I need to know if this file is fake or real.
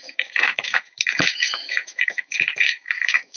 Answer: fake